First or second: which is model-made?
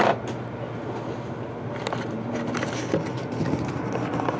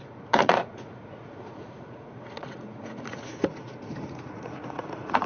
second